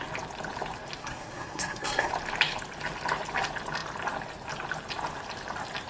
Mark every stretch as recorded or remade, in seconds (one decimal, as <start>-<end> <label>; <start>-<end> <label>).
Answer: 0.0-1.0 recorded; 1.0-2.1 remade; 2.1-5.9 recorded